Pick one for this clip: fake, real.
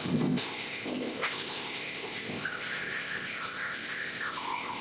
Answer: fake